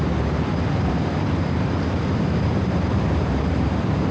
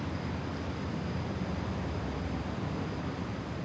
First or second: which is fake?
first